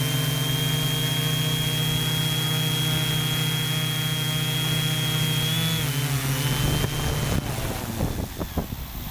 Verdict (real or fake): real